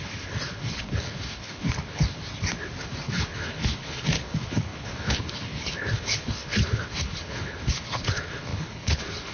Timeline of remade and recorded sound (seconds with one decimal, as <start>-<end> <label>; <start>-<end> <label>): 0.0-2.2 remade; 2.2-2.8 recorded; 2.8-9.3 remade